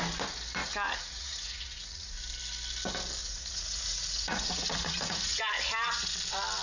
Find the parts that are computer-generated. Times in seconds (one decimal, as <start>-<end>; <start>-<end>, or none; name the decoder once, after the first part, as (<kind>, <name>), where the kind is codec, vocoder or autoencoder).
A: 0.6-2.1 (vocoder, Vocos); 3.2-6.1